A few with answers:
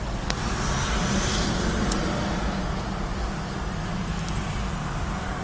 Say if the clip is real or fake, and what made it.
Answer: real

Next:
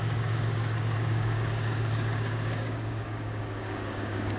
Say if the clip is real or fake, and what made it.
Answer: fake, codec, DAC